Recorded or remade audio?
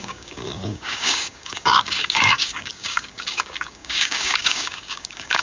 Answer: remade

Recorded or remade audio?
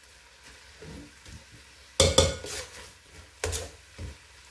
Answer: recorded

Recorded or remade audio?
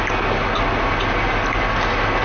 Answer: recorded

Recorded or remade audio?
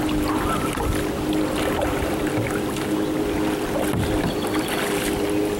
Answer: recorded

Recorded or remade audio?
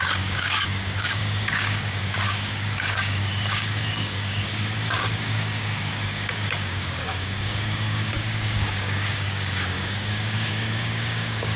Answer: remade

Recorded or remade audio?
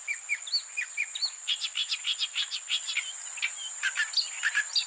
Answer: recorded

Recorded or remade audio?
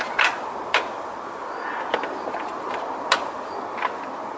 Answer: recorded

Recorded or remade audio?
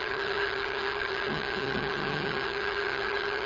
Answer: remade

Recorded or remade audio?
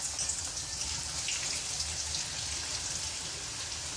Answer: recorded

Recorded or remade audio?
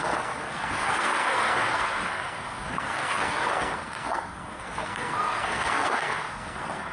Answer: remade